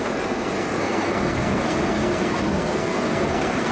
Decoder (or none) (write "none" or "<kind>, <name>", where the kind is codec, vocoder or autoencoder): codec, SNAC